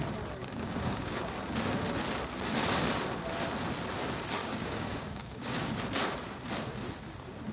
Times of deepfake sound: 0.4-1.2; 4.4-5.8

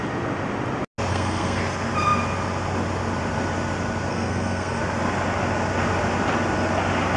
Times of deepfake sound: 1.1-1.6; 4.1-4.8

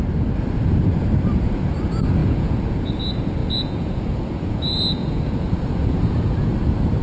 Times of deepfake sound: 2.2-2.9; 3.4-6.5

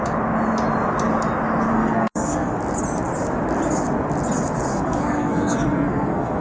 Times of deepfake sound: 1.7-2.5; 4.7-6.4

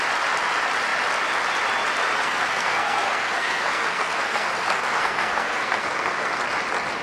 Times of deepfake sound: 2.2-6.4

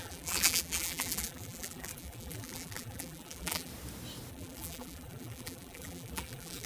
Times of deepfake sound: 0.0-3.7; 4.3-6.7

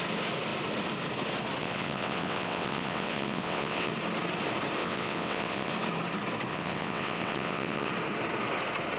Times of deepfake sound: 1.6-3.9; 4.8-5.7; 6.5-7.9